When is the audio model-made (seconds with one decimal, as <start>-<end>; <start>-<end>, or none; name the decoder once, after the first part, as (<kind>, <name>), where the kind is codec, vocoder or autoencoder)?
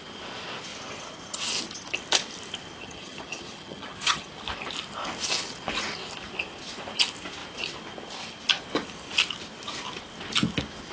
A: 2.8-4.3 (vocoder, HiFi-GAN)